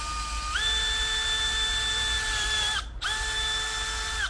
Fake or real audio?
real